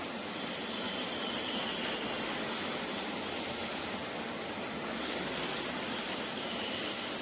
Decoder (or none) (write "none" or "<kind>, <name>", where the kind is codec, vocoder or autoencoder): none